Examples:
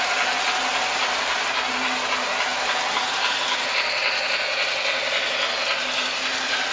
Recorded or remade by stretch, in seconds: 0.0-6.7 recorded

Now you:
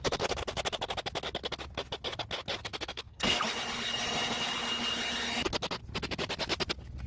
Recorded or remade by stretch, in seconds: 0.0-2.7 recorded; 2.7-3.4 remade; 3.4-7.1 recorded

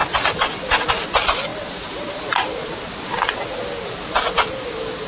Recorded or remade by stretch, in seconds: 0.0-5.1 recorded

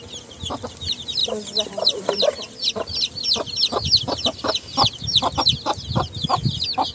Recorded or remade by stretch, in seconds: 0.0-6.9 recorded